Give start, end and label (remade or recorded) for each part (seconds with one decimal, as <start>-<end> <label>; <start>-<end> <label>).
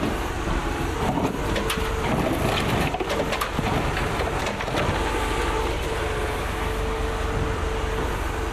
0.0-4.4 remade; 4.4-7.2 recorded; 7.2-8.5 remade